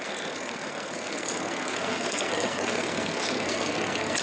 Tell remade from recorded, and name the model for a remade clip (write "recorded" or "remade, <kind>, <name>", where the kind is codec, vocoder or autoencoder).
remade, codec, SNAC